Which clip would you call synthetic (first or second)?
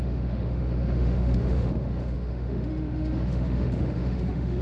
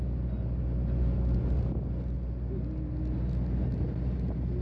first